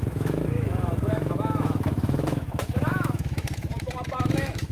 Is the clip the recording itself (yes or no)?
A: no